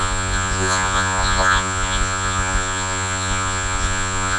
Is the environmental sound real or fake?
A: fake